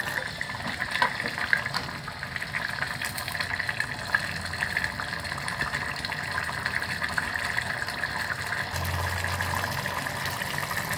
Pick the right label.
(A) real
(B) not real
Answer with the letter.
A